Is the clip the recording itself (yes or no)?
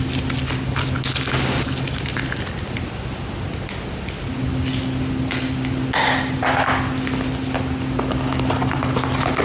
yes